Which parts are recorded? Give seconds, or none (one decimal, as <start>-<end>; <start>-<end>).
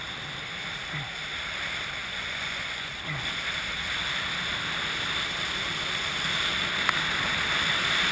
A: 0.0-2.0; 2.9-8.1